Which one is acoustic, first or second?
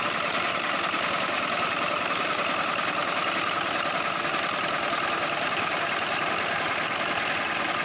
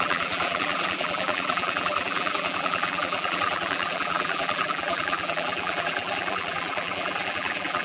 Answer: first